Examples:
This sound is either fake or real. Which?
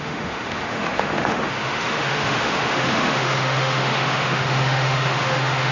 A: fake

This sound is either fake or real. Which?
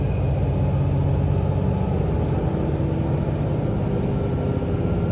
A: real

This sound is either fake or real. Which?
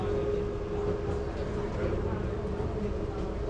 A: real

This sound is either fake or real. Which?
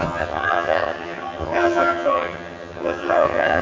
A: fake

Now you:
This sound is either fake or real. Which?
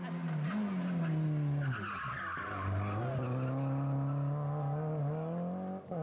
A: real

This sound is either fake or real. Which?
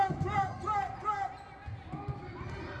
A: real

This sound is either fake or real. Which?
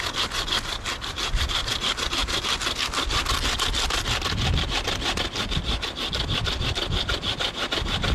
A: real